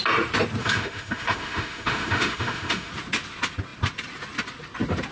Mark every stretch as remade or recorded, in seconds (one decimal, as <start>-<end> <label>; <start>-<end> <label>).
0.0-0.6 recorded; 0.6-2.9 remade; 2.9-5.1 recorded